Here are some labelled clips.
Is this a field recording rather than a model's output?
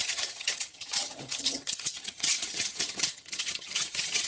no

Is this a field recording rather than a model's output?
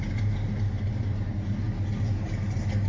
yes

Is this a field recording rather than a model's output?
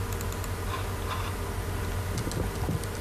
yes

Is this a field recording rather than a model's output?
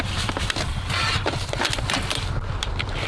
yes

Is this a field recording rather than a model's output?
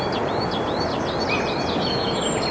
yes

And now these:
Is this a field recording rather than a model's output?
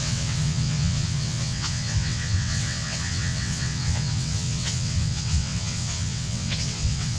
no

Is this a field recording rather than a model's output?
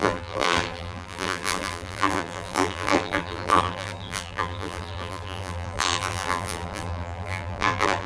no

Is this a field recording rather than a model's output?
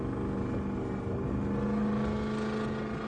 yes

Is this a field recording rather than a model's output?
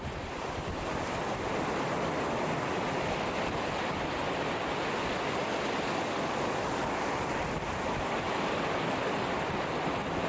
yes